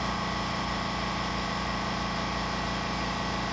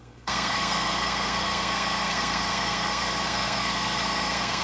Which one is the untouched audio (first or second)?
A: first